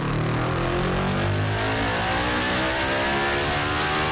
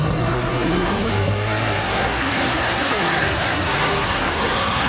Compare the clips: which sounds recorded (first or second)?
first